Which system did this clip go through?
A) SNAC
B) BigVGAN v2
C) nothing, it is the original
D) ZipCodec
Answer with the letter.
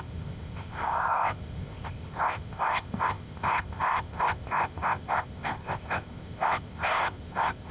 D